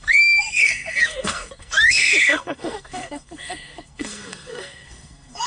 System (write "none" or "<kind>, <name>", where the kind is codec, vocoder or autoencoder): codec, SNAC